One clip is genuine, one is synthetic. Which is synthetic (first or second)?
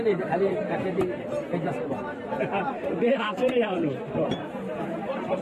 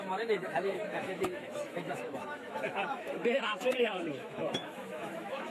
second